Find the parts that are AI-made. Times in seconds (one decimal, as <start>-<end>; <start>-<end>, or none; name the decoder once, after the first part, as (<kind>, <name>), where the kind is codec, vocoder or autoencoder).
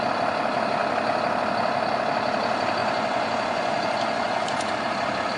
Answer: 2.8-4.7 (vocoder, Vocos)